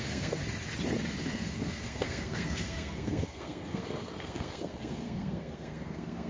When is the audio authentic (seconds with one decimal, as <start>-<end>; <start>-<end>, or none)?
0.4-1.2